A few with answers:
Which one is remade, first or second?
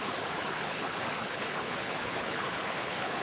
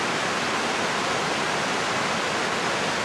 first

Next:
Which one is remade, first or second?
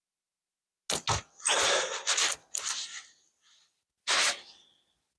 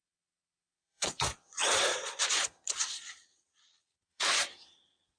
second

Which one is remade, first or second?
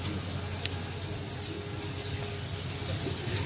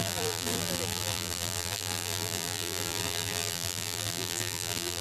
second